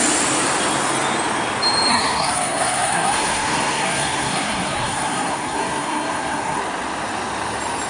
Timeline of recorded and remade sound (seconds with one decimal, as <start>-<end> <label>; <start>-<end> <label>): 0.0-1.9 recorded; 1.9-6.6 remade; 6.6-7.9 recorded

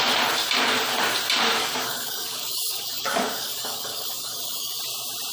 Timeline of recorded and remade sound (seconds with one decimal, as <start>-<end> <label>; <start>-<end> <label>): 0.0-1.6 recorded; 1.6-4.8 remade; 4.8-5.3 recorded